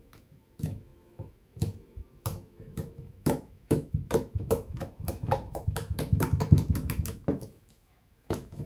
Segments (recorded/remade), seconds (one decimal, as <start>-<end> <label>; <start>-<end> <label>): 0.0-8.7 remade